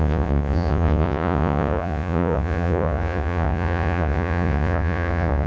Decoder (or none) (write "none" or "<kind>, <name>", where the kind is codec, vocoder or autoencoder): vocoder, Vocos